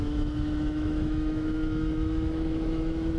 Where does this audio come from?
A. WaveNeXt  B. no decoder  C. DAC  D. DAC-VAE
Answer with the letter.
D